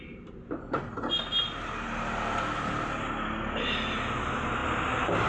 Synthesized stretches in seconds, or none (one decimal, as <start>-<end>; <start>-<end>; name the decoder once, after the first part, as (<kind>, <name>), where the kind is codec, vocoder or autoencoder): none